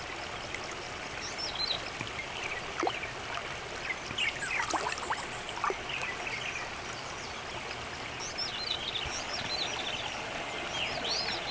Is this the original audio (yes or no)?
yes